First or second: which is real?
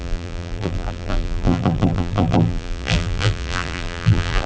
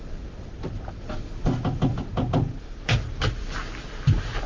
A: second